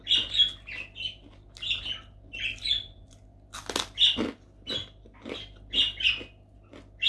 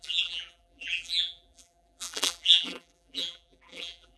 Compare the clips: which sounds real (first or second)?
first